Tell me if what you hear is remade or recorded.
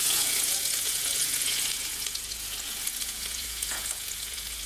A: remade